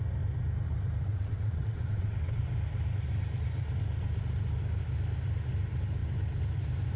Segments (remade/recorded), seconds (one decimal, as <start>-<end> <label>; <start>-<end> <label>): 0.0-1.1 recorded; 1.1-2.4 remade; 2.4-7.0 recorded